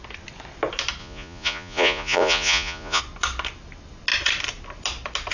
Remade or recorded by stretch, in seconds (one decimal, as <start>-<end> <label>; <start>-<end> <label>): 0.0-1.0 recorded; 1.0-3.0 remade; 3.0-5.3 recorded